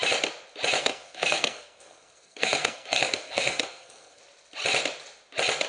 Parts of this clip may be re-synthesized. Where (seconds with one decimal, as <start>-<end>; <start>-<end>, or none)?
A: 0.8-4.2